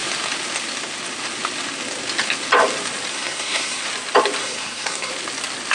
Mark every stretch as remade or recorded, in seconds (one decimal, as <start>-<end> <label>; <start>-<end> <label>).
0.0-3.1 recorded; 3.1-3.8 remade; 3.8-4.4 recorded; 4.4-5.1 remade; 5.1-5.7 recorded